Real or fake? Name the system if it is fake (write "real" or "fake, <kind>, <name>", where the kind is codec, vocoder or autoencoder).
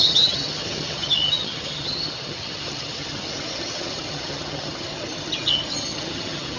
fake, vocoder, HiFi-GAN